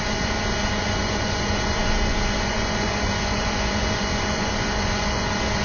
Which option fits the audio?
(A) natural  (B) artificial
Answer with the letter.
B